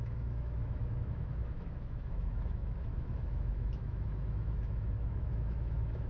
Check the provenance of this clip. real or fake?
fake